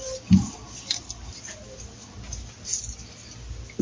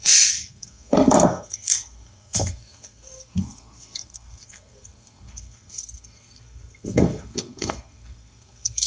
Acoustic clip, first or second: first